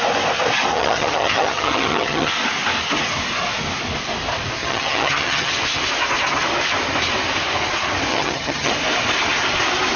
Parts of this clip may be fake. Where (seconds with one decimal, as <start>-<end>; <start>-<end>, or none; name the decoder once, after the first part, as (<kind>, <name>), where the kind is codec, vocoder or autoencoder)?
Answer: 0.7-2.3 (vocoder, HiFi-GAN); 4.6-5.5; 8.1-8.7